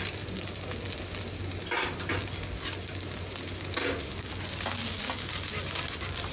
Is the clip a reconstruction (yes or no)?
no